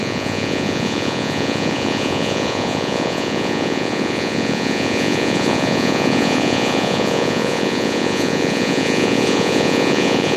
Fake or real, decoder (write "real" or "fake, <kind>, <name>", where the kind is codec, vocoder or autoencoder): fake, vocoder, Vocos